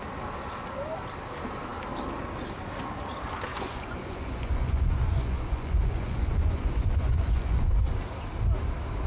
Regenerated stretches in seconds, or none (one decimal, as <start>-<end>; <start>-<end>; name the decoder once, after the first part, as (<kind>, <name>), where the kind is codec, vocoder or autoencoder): 3.5-7.9 (vocoder, Vocos)